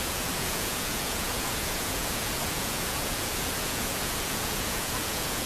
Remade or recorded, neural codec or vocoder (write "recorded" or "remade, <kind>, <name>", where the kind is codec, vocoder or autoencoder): remade, vocoder, Vocos